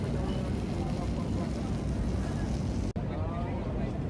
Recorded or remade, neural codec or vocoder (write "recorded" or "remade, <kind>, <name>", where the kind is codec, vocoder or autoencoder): recorded